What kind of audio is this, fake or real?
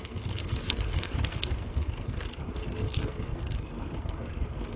fake